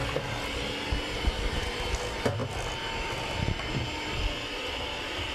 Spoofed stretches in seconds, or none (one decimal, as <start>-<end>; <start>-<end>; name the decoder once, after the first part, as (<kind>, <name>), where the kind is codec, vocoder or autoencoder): none